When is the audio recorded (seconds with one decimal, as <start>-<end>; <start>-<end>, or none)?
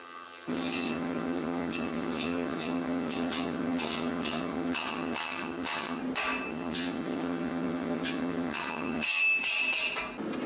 6.0-6.5; 9.2-10.5